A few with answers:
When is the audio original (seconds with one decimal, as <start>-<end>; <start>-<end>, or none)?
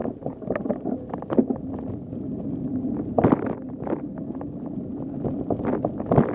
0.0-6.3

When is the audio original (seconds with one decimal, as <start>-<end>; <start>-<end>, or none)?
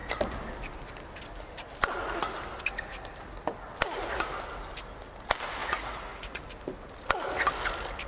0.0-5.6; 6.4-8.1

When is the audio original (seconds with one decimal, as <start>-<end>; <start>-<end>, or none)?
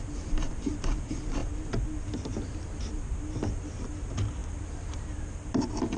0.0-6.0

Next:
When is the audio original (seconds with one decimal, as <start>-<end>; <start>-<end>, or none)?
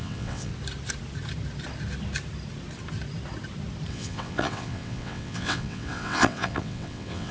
0.5-3.9